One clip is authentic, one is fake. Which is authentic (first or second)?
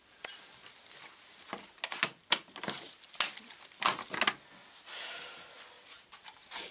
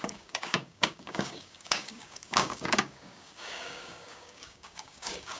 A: first